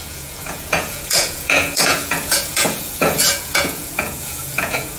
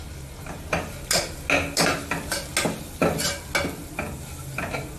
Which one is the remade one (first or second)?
first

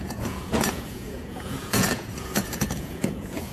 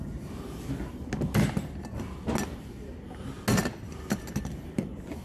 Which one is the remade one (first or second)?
first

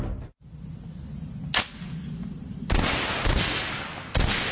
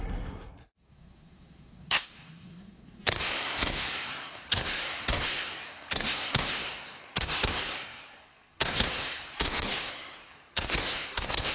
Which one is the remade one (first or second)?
second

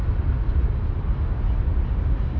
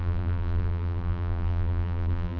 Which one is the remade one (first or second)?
second